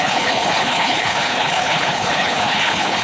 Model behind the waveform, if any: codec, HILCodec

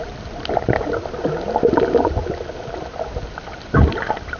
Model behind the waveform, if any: none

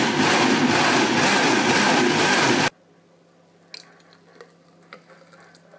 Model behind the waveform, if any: none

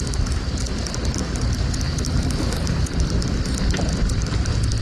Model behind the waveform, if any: none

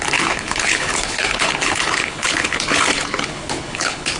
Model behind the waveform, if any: codec, HILCodec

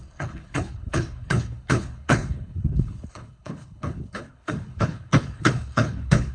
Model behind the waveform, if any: codec, HILCodec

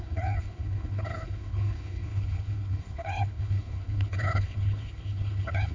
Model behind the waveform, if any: codec, HILCodec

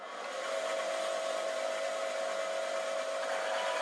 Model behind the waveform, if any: none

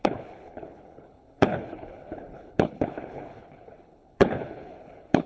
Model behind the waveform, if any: codec, HILCodec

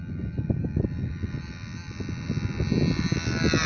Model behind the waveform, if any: none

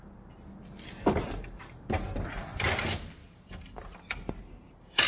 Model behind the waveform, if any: none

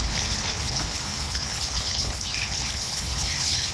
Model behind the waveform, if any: codec, HILCodec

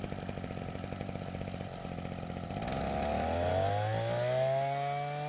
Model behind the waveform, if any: none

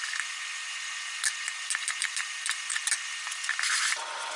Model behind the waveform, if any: none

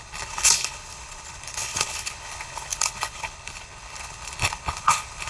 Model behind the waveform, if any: codec, HILCodec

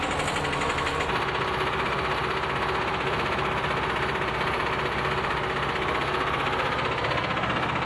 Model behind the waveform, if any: none